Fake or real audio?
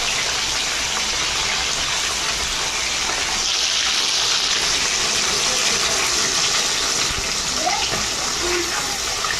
real